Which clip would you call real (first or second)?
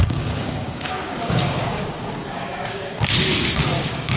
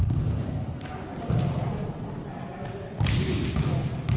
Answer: second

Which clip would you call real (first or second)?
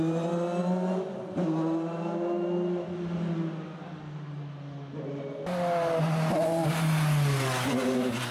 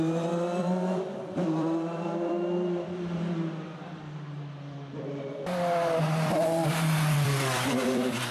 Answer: first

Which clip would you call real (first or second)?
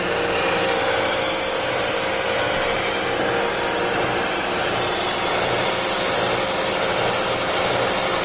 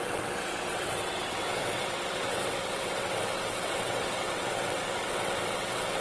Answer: first